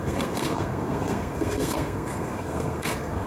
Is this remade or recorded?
remade